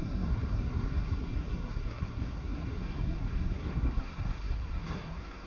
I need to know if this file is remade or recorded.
remade